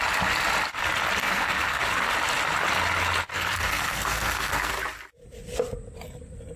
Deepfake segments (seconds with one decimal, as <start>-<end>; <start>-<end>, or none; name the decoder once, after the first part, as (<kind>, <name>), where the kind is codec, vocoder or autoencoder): 1.2-1.8 (codec, SNAC); 3.3-4.7